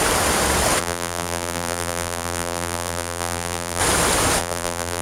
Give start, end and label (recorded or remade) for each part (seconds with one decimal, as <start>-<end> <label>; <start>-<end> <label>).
0.0-0.8 recorded; 0.8-3.8 remade; 3.8-4.4 recorded; 4.4-5.0 remade